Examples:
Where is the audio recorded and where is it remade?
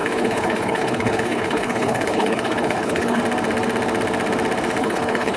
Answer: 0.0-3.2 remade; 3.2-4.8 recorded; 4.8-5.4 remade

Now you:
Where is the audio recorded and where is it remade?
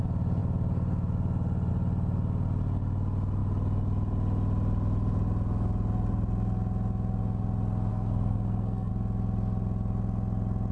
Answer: 0.0-7.9 recorded; 7.9-8.9 remade; 8.9-10.7 recorded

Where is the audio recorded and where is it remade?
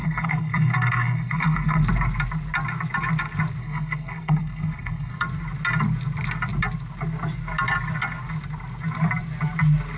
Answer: 0.0-1.8 remade; 1.8-3.6 recorded; 3.6-5.1 remade; 5.1-10.0 recorded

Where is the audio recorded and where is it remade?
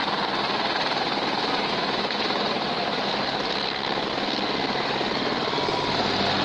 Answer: 0.0-6.4 recorded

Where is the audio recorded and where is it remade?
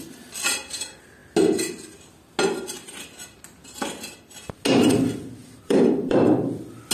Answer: 0.0-5.4 recorded; 5.4-6.9 remade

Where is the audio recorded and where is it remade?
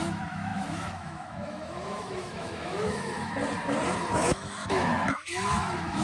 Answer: 0.0-3.4 remade; 3.4-4.1 recorded; 4.1-6.0 remade